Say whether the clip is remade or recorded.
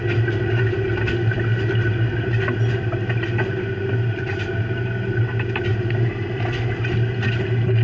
recorded